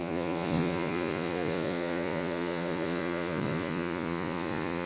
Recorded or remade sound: remade